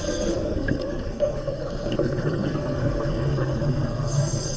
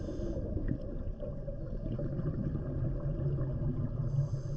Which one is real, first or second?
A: second